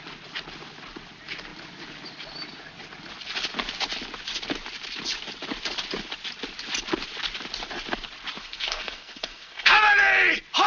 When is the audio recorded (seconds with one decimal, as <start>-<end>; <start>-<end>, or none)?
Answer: 0.0-8.4; 9.7-10.7